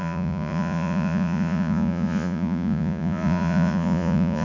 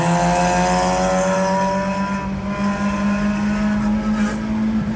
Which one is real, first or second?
second